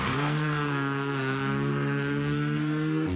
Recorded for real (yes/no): no